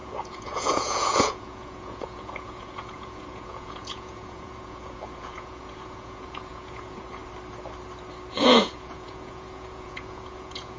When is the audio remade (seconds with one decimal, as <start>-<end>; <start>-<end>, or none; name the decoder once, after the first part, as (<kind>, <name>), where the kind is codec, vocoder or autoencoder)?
0.0-7.2 (vocoder, Vocos); 8.3-10.8